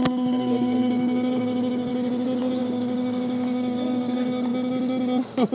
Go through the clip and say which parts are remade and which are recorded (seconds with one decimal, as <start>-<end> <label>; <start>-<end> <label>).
0.0-1.9 remade; 1.9-2.6 recorded; 2.6-4.5 remade; 4.5-5.5 recorded